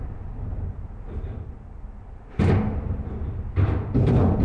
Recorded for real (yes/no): yes